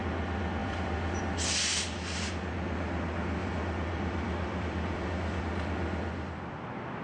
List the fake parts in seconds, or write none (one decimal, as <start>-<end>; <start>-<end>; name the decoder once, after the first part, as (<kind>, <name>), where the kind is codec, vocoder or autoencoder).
0.6-1.2 (vocoder, BigVGAN v2); 3.4-5.4